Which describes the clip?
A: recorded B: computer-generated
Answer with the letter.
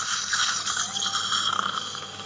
A